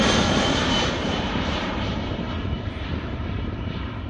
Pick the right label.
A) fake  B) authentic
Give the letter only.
A